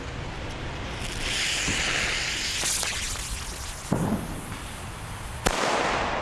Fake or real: real